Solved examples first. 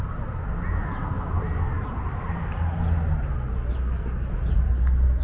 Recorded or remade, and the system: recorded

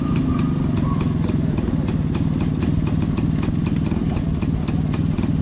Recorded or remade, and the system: recorded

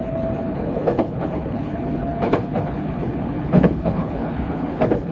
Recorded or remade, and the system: remade, codec, HILCodec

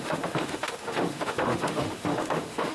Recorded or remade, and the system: remade, autoencoder, DAC-VAE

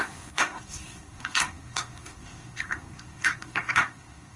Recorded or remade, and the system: remade, codec, SNAC